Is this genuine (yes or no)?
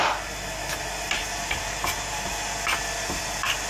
yes